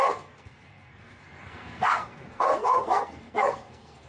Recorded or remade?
remade